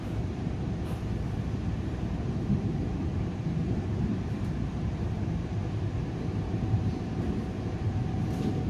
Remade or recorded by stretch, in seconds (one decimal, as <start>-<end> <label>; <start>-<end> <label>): 0.0-8.7 remade